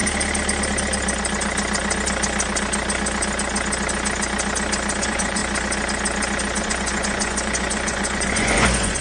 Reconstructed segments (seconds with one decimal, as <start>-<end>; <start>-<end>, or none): 5.0-5.4; 6.6-9.0